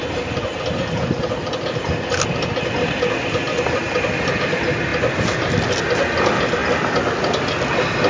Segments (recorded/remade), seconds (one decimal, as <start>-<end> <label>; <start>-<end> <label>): 0.0-8.1 recorded